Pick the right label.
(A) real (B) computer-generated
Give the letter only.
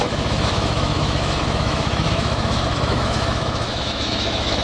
B